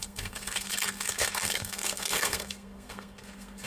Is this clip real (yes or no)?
no